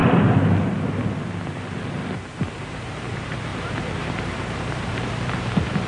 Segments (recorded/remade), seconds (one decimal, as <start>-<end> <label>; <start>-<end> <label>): 0.0-2.5 recorded; 2.5-5.9 remade